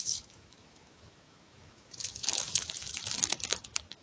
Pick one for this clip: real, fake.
fake